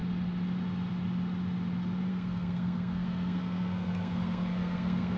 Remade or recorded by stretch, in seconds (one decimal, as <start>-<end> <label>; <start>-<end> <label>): 0.0-2.1 recorded; 2.1-5.2 remade